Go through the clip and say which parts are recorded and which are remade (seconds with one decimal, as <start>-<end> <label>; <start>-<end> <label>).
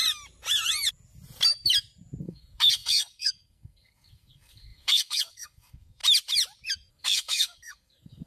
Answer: 0.0-2.2 recorded; 2.2-6.0 remade; 6.0-6.9 recorded; 6.9-8.3 remade